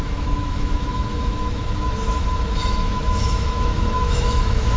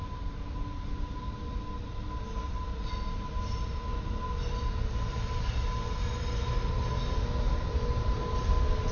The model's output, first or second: first